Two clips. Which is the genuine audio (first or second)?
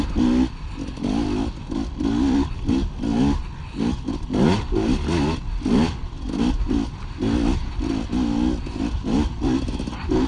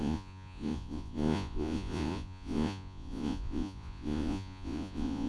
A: first